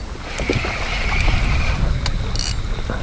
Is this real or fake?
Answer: real